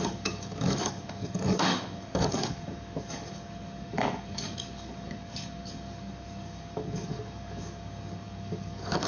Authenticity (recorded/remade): remade